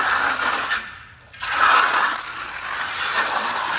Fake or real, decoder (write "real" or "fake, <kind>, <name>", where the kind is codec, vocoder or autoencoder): real